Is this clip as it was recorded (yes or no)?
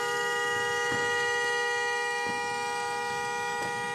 yes